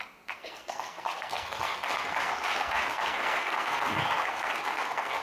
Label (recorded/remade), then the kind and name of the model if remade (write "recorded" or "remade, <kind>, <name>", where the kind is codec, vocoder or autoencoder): remade, codec, SNAC